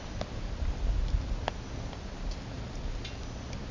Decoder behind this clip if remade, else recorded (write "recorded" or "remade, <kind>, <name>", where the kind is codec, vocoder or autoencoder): recorded